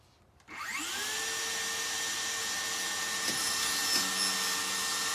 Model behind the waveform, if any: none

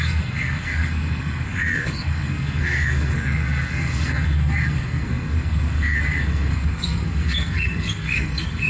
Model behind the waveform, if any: codec, SNAC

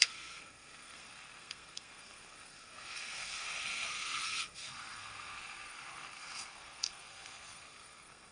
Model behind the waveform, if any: codec, SNAC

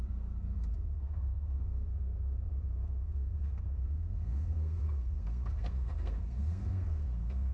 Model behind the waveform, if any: codec, SNAC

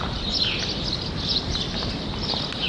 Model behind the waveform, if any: none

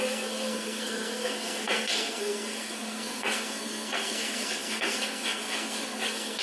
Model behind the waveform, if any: codec, SNAC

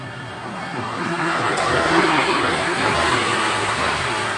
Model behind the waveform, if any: codec, SNAC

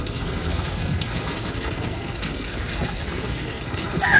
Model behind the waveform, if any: codec, SNAC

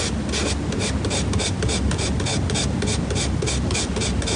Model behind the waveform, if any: none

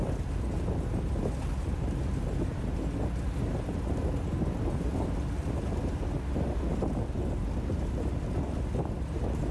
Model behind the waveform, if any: none